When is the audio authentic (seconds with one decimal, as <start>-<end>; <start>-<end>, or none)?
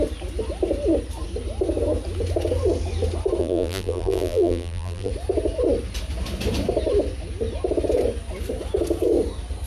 0.0-3.4; 5.1-9.7